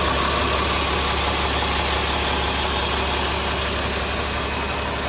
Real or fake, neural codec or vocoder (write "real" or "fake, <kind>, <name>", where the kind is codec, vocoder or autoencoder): real